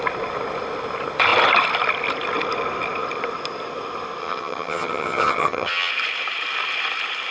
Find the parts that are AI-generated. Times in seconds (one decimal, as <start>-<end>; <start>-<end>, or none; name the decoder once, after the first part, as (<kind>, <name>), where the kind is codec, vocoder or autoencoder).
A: 4.2-5.9 (vocoder, HiFi-GAN)